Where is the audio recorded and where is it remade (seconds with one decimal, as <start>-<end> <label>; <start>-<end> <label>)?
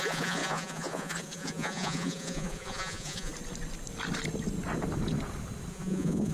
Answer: 0.0-3.3 remade; 3.3-5.7 recorded; 5.7-6.3 remade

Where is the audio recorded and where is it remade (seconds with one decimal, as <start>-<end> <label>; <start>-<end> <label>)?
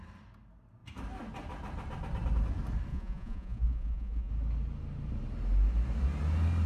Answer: 0.0-2.9 recorded; 2.9-4.3 remade; 4.3-6.7 recorded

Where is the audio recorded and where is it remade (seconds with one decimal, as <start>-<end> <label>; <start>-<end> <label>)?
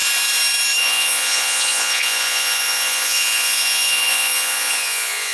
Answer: 0.0-0.8 recorded; 0.8-5.3 remade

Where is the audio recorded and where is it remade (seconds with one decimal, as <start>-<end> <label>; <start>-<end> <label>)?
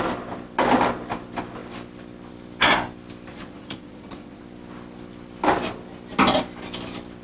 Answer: 0.0-3.3 recorded; 3.3-4.4 remade; 4.4-7.2 recorded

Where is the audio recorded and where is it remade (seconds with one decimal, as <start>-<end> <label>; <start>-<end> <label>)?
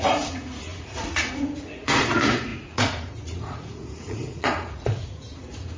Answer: 0.0-5.8 remade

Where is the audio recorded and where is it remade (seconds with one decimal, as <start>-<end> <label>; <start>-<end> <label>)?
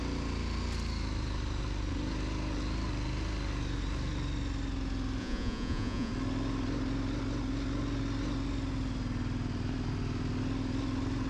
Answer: 0.0-5.2 recorded; 5.2-6.1 remade; 6.1-11.3 recorded